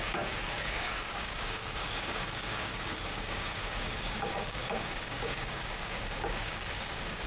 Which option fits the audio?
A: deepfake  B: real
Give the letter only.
A